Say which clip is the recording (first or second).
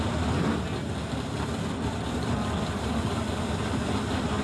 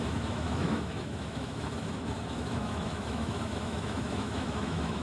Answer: first